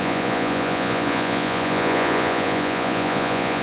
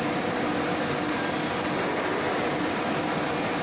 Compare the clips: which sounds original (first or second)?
second